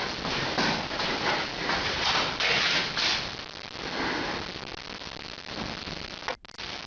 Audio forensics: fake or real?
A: real